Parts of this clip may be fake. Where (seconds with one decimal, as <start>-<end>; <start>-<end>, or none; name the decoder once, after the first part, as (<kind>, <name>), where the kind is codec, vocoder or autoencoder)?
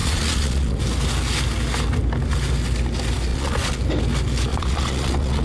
0.0-0.8 (vocoder, Vocos); 3.3-3.8; 4.5-5.4